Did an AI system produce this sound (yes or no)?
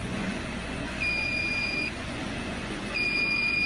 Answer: yes